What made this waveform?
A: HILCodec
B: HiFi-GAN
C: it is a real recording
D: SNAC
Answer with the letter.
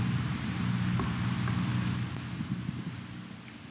C